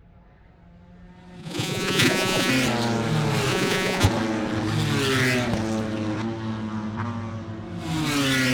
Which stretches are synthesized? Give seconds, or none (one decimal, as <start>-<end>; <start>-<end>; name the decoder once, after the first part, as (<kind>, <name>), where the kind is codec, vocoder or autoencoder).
1.4-2.5 (vocoder, Vocos); 3.5-4.1